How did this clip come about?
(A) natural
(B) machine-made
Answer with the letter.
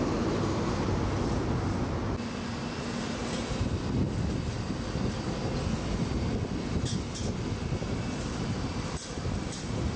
A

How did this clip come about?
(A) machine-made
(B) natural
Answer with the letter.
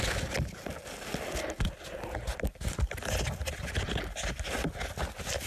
B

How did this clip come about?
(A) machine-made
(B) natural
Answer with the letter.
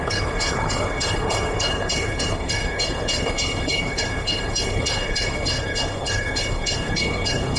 A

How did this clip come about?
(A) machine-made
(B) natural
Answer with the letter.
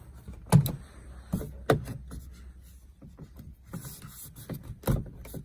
B